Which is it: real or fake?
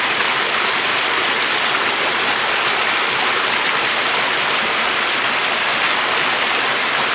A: real